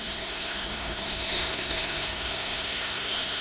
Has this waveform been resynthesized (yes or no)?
yes